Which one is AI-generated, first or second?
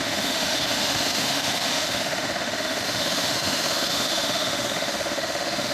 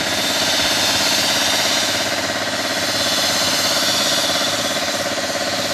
first